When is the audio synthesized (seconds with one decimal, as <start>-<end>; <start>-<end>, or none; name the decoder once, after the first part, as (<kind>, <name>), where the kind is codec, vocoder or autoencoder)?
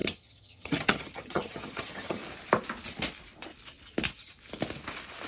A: 0.0-2.2 (vocoder, HiFi-GAN)